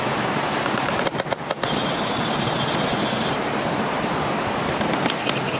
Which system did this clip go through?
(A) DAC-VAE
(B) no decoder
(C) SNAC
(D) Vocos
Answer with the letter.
B